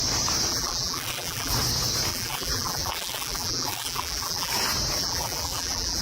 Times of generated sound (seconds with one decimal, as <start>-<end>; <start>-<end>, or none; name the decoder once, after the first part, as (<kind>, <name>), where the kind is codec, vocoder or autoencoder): 0.5-1.5 (vocoder, BigVGAN v2); 2.1-4.5; 5.0-6.0